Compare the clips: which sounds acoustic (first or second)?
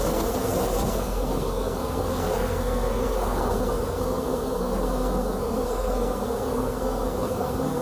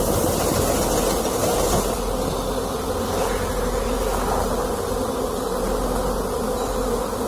second